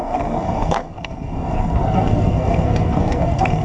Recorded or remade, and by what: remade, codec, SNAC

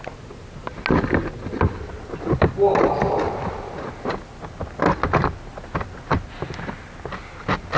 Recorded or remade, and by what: recorded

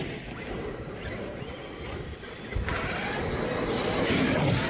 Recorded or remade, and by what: recorded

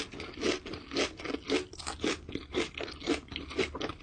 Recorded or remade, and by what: recorded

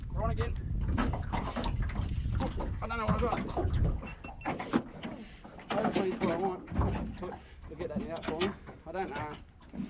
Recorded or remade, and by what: recorded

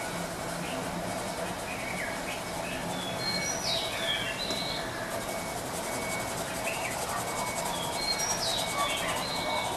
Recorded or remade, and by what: recorded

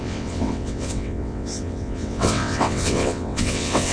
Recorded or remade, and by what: remade, vocoder, WaveNeXt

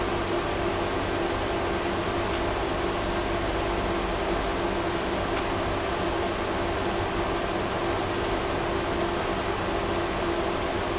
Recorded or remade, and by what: recorded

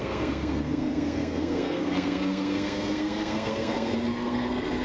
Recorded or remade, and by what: remade, codec, SNAC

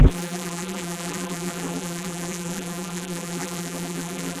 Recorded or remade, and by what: remade, vocoder, BigVGAN v2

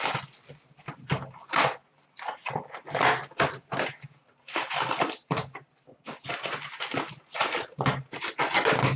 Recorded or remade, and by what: recorded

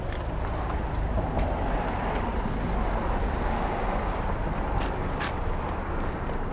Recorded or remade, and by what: recorded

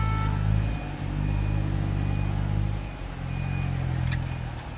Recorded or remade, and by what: recorded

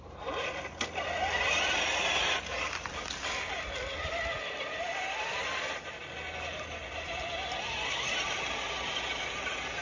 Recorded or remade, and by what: recorded